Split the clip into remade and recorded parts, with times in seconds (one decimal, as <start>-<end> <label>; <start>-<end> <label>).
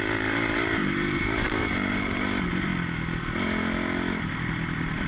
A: 0.0-2.7 remade; 2.7-4.1 recorded; 4.1-5.1 remade